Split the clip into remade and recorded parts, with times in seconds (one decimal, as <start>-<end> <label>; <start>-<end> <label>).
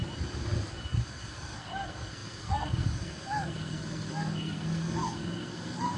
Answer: 0.0-0.9 recorded; 0.9-6.0 remade